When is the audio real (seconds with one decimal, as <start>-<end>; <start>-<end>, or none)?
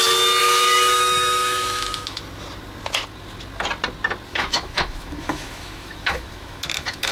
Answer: 0.0-0.4; 2.2-4.3